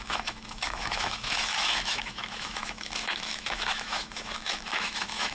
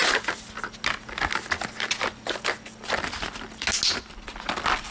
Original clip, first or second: second